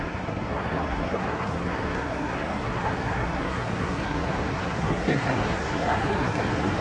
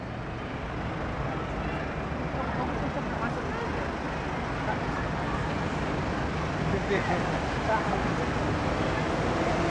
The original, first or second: second